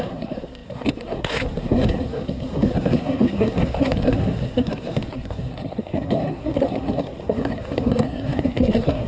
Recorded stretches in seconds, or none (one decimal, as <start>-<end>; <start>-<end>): none